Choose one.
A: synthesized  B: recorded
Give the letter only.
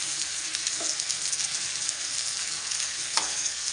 A